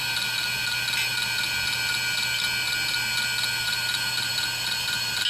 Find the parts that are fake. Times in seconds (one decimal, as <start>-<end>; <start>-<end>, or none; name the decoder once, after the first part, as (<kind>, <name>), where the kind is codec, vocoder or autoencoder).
none